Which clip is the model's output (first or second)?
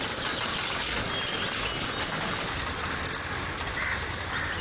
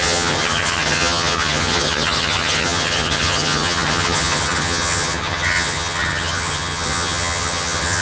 second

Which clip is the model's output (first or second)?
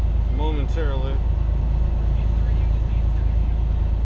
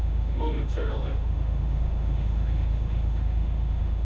second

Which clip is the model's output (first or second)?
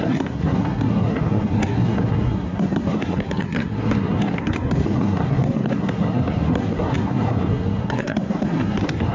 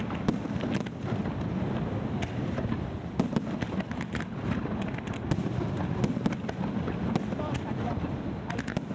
first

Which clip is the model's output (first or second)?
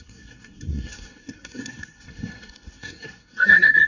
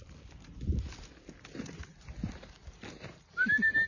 first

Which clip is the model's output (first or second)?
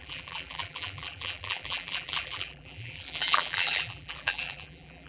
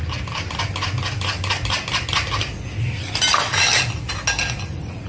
first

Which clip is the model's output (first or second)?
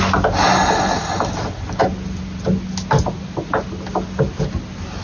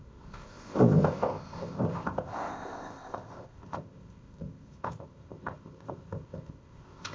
second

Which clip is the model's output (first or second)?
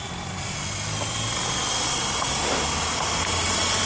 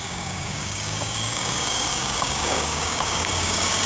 second